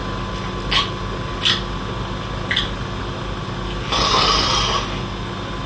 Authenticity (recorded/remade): recorded